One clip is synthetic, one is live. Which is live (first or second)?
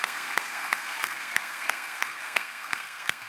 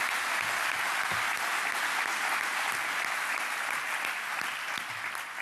second